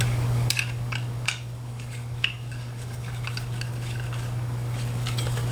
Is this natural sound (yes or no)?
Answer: no